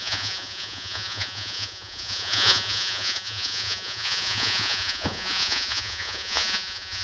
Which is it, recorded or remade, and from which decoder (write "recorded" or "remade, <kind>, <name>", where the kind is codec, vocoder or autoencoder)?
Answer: remade, vocoder, Vocos